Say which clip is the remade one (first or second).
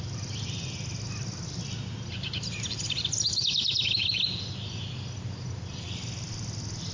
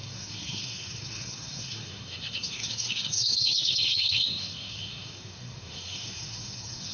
second